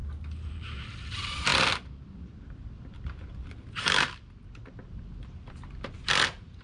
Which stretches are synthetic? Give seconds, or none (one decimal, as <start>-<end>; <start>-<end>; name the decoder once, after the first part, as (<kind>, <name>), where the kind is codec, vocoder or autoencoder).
none